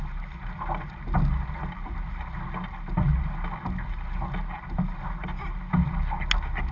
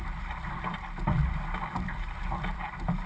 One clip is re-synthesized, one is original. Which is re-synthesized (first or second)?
second